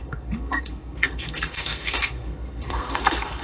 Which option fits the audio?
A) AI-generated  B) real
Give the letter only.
A